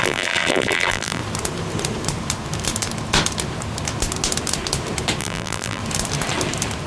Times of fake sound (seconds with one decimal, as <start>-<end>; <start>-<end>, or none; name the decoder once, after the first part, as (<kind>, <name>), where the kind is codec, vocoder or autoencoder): 0.0-1.2 (vocoder, BigVGAN v2); 5.2-5.8